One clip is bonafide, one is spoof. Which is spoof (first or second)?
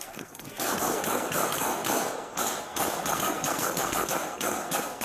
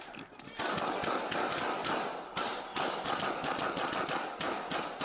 first